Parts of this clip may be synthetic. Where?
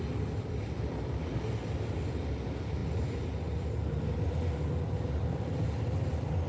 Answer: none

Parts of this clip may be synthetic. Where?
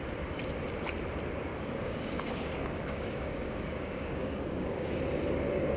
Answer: 1.5-5.0 (codec, DAC)